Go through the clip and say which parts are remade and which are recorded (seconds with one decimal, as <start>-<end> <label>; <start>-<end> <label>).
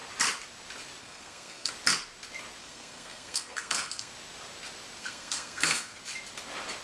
0.0-1.0 recorded; 1.0-1.7 remade; 1.7-2.6 recorded; 2.6-4.1 remade; 4.1-5.0 recorded; 5.0-6.0 remade; 6.0-6.8 recorded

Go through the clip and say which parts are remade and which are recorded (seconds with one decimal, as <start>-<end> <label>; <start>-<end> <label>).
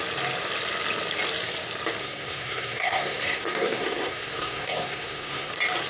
0.0-2.0 recorded; 2.0-5.5 remade; 5.5-5.9 recorded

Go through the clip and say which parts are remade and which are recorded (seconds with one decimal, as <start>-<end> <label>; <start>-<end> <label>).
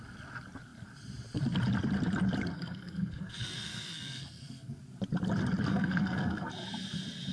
0.0-2.5 recorded; 2.5-4.8 remade; 4.8-5.7 recorded; 5.7-6.5 remade; 6.5-7.3 recorded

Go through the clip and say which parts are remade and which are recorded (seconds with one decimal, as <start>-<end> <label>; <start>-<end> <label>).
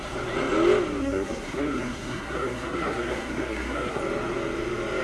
0.0-1.0 recorded; 1.0-4.0 remade; 4.0-5.0 recorded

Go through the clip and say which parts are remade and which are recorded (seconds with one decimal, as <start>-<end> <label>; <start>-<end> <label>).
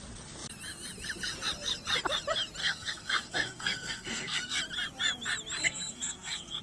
0.0-2.6 recorded; 2.6-4.6 remade; 4.6-5.6 recorded; 5.6-6.6 remade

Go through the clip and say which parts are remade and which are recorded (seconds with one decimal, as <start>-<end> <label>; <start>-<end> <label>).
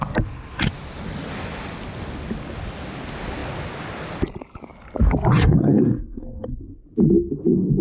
0.0-5.3 recorded; 5.3-6.6 remade; 6.6-7.8 recorded